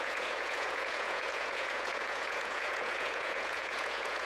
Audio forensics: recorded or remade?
remade